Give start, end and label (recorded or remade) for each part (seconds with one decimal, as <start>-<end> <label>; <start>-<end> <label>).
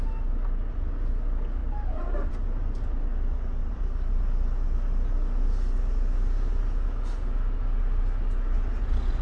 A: 0.0-1.6 recorded; 1.6-2.3 remade; 2.3-3.6 recorded; 3.6-4.2 remade; 4.2-9.2 recorded